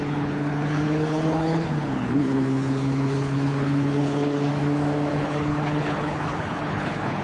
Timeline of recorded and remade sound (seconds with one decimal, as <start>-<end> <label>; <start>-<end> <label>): 0.0-4.5 remade; 4.5-5.1 recorded; 5.1-7.2 remade